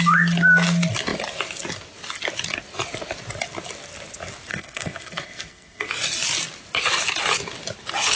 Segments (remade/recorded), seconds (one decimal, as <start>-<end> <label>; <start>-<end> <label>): 0.0-4.5 recorded; 4.5-5.9 remade; 5.9-8.2 recorded